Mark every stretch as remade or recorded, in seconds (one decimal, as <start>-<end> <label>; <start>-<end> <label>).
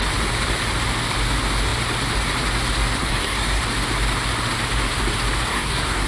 0.0-3.0 recorded; 3.0-3.6 remade; 3.6-5.5 recorded; 5.5-6.1 remade